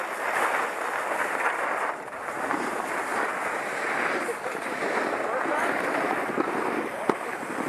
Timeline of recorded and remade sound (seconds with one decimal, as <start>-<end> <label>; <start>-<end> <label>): 0.0-7.7 recorded